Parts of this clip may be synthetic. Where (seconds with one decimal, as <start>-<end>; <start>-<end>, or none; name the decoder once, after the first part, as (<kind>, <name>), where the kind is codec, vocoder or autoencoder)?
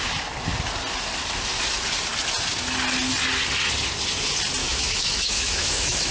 4.6-6.1 (autoencoder, DAC-VAE)